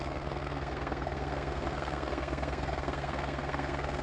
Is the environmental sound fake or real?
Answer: fake